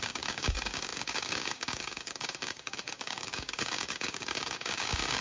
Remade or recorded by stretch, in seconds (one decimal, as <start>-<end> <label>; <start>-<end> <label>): 0.0-5.2 remade